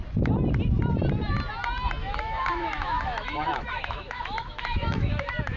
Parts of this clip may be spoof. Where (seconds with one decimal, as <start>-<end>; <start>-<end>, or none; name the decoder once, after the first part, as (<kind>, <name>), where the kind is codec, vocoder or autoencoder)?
2.0-5.6 (autoencoder, DAC-VAE)